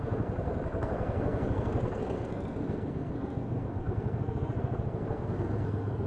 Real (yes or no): no